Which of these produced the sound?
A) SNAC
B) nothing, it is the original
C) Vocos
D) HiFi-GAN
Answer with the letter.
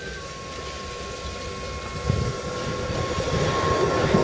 B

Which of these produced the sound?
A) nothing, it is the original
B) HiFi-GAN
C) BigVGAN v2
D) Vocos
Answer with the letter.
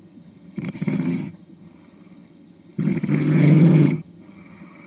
B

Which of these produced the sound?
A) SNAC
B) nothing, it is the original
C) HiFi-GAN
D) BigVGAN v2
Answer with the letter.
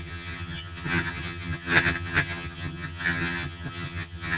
C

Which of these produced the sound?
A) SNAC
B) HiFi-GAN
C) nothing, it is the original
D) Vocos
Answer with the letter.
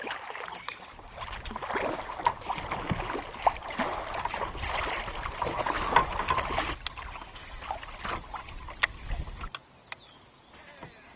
C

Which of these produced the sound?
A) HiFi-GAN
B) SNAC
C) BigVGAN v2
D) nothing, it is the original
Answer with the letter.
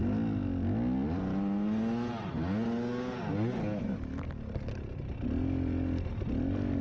D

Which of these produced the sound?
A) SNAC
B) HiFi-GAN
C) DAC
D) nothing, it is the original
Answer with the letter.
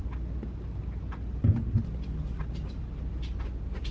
D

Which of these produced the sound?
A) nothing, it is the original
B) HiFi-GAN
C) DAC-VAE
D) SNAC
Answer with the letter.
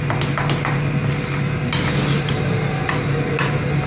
A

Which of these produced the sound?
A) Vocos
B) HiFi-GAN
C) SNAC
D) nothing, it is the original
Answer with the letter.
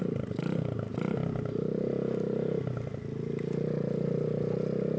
D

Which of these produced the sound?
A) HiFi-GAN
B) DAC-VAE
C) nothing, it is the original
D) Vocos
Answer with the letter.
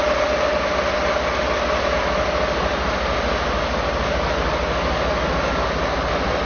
C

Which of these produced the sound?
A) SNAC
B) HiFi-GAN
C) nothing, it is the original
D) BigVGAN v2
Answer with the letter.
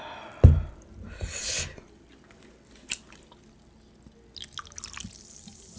C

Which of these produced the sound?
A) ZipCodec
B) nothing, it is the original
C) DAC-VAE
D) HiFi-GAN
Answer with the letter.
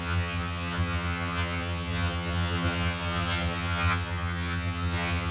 D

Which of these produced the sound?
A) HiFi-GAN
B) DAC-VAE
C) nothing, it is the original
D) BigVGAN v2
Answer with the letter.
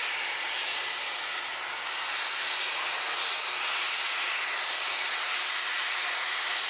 C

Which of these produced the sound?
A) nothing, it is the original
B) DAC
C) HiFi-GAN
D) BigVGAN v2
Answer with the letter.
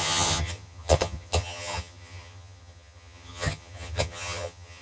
C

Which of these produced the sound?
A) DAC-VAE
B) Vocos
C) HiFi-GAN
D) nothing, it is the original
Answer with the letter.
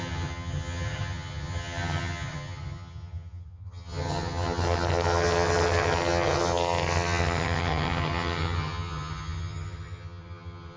C